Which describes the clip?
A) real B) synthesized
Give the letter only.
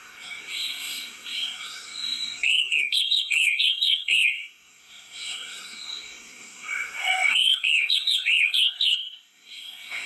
B